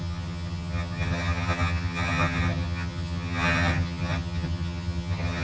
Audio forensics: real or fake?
fake